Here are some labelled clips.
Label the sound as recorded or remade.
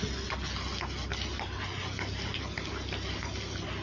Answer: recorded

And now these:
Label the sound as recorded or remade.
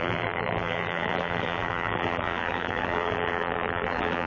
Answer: remade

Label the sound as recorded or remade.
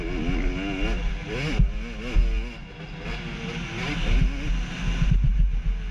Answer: recorded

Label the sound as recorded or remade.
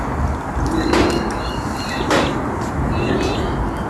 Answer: recorded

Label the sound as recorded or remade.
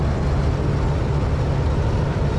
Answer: remade